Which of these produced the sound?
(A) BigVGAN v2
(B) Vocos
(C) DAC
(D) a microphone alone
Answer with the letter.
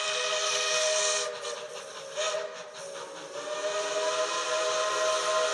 D